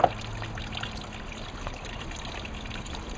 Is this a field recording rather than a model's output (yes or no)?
yes